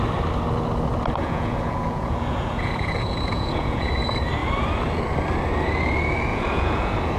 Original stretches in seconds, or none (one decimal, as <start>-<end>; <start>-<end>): 0.0-1.2; 3.9-6.3